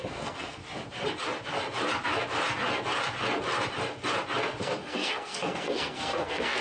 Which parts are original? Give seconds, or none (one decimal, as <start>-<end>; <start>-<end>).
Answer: 0.6-4.6